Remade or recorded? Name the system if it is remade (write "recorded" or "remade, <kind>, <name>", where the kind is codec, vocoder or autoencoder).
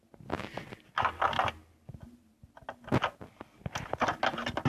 recorded